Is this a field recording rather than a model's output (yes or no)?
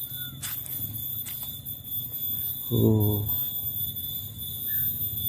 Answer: yes